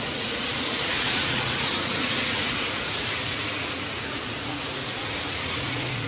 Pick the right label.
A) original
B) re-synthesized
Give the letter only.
B